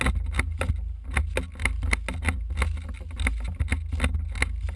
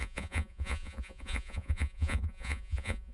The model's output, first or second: second